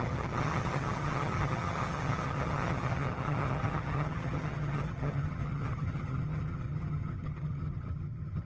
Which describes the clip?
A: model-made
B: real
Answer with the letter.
A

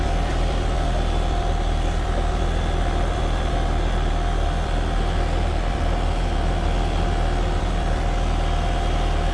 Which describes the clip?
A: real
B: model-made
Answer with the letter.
B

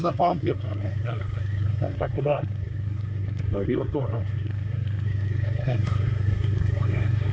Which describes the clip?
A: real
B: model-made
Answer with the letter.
B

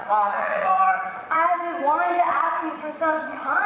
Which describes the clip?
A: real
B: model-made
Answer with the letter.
B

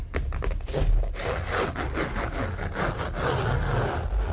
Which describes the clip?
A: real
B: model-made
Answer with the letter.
A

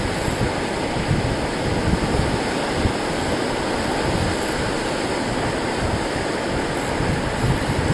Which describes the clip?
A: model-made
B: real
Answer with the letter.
B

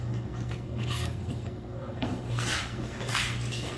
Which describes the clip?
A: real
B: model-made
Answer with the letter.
B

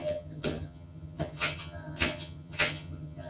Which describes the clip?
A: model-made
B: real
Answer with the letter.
A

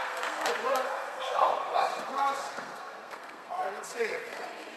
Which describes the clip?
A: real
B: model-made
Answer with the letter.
B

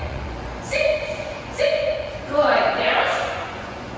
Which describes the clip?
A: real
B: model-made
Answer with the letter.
B